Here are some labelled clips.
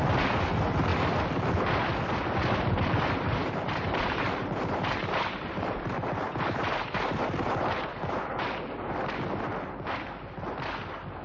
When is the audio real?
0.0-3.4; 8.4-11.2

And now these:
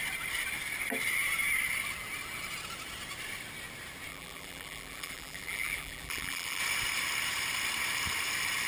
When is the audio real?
0.0-4.1; 6.6-8.7

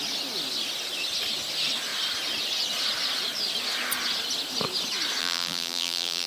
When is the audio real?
0.0-5.2